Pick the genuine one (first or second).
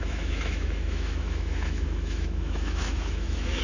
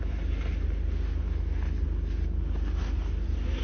second